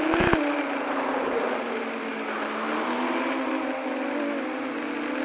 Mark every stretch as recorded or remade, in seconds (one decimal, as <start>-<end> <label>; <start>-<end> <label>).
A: 0.0-5.2 recorded